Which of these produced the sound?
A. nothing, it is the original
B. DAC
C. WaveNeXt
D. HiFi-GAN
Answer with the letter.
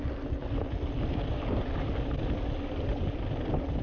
A